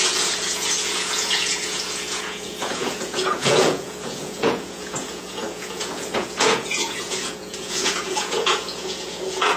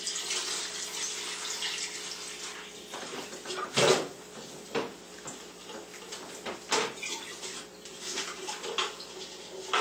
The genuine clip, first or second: second